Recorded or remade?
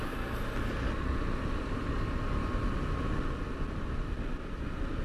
recorded